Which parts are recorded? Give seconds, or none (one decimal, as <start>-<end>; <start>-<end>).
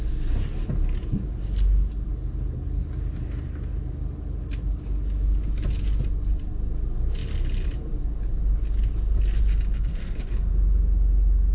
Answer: 0.0-9.9; 10.5-11.5